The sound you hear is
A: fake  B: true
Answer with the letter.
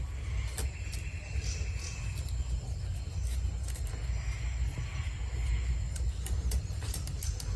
B